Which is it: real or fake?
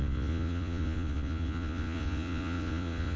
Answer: fake